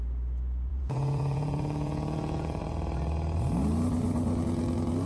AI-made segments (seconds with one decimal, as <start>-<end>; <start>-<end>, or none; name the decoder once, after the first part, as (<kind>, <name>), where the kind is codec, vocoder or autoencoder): 0.7-2.6 (vocoder, Vocos)